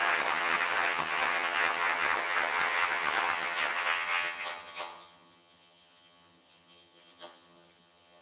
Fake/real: fake